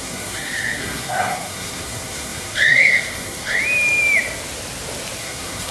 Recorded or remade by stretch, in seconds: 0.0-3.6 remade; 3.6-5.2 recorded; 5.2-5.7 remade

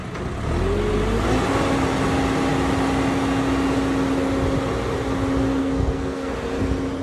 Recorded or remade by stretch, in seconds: 0.0-5.6 recorded; 5.6-6.3 remade; 6.3-7.0 recorded